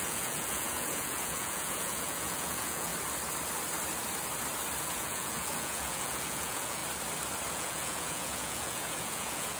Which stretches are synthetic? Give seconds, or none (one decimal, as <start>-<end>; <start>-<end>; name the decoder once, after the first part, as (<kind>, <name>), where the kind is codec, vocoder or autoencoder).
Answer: 0.0-2.9 (vocoder, Vocos); 4.8-6.8; 7.5-9.6